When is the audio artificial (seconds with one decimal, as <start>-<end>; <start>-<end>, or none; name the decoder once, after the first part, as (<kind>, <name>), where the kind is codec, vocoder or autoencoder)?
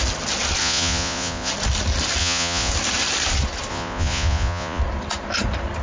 0.6-1.5 (vocoder, Vocos); 2.2-2.7; 3.7-4.8